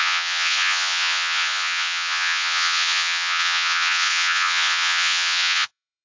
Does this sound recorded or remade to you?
remade